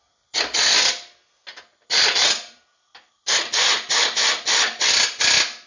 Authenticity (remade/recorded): recorded